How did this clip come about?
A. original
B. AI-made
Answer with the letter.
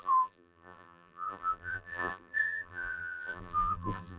B